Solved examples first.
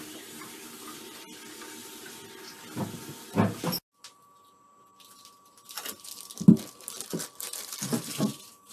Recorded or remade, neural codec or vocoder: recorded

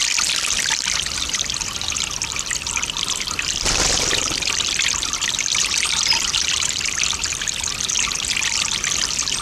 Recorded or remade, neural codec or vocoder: recorded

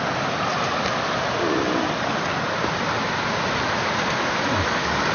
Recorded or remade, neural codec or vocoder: recorded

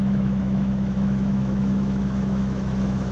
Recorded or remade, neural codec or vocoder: remade, autoencoder, DAC-VAE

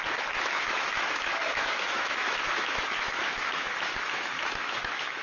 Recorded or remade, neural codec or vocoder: remade, autoencoder, DAC-VAE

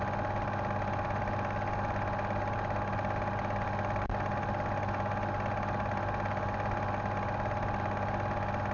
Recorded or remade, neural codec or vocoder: recorded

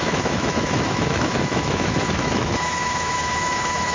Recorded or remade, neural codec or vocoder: remade, autoencoder, DAC-VAE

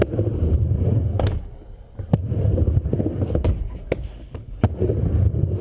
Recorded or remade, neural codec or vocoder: recorded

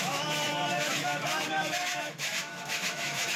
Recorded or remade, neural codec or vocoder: remade, autoencoder, DAC-VAE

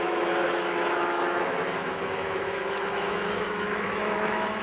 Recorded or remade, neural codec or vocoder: remade, autoencoder, DAC-VAE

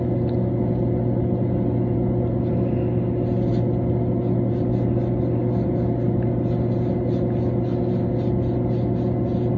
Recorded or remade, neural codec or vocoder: recorded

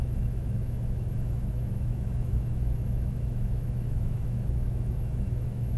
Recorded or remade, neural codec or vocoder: remade, autoencoder, DAC-VAE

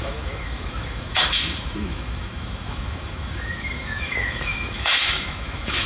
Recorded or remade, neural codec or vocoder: remade, autoencoder, DAC-VAE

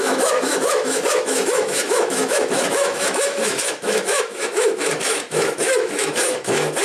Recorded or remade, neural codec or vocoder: remade, autoencoder, DAC-VAE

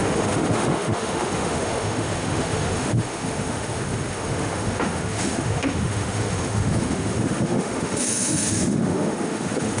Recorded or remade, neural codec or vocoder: remade, autoencoder, DAC-VAE